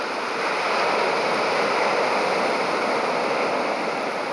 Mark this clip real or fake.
real